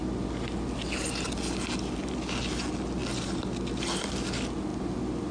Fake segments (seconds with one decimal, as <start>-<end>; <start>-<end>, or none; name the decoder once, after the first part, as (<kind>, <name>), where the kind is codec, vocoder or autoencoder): none

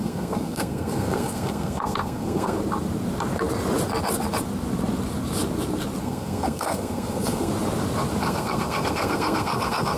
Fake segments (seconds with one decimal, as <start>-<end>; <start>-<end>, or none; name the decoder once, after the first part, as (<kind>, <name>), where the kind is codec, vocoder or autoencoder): 0.0-2.6 (codec, SNAC); 6.0-7.5; 8.2-10.0